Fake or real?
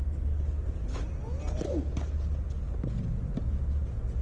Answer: real